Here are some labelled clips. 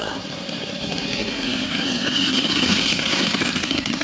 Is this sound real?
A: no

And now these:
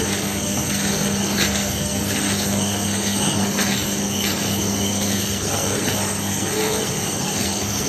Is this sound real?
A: no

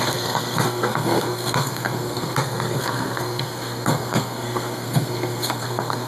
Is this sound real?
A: no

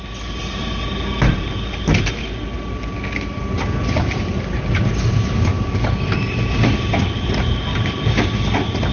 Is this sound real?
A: yes